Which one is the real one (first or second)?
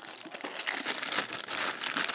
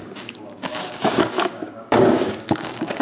first